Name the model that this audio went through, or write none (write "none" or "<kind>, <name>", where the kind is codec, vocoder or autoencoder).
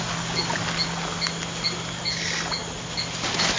none